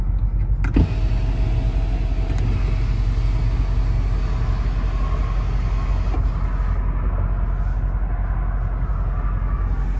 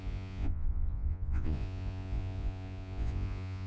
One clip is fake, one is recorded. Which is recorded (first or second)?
first